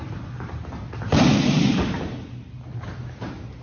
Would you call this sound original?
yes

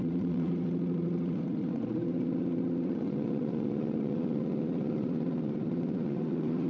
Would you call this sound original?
no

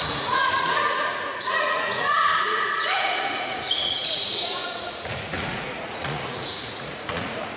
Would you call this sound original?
no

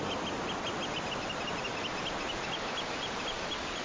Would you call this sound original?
yes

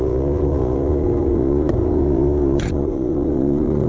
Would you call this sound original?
no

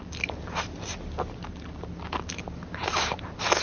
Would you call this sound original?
yes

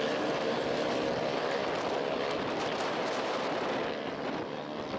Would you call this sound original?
yes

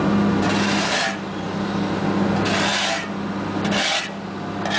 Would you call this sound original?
yes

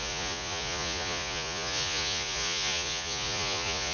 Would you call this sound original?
no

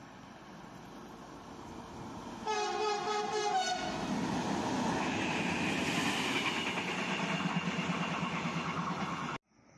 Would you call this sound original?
yes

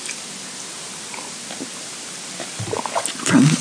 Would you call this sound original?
yes